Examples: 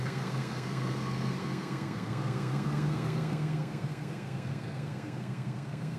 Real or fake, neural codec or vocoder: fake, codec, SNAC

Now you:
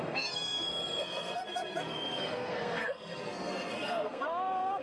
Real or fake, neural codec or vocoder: fake, codec, SNAC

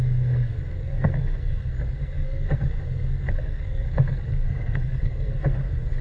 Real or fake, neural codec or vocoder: fake, codec, SNAC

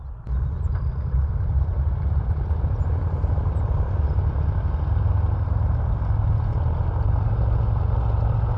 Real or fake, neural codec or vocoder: real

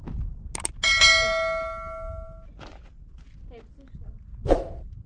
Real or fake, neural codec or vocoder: real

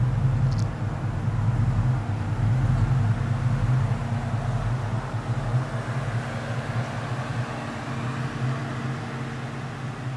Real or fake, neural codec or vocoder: real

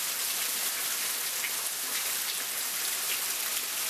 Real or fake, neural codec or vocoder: real